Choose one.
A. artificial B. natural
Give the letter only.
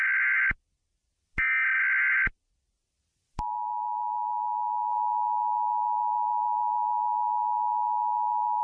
B